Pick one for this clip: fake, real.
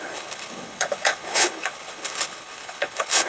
fake